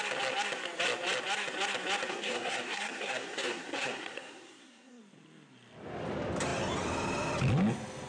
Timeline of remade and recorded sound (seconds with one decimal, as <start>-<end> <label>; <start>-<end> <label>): 0.0-2.1 recorded; 2.1-5.0 remade; 5.0-8.1 recorded